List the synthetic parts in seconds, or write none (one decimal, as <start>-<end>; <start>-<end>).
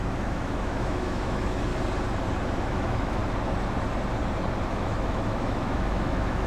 0.0-1.7; 2.6-3.2; 4.7-6.5